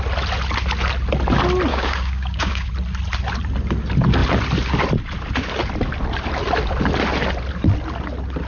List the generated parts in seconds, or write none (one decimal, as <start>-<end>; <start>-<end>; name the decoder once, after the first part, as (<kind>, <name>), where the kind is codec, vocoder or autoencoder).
1.7-2.7 (codec, DAC)